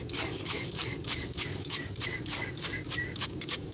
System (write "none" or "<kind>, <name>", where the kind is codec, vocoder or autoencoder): codec, DAC